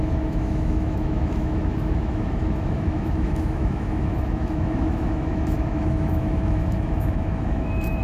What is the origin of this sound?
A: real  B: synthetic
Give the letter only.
B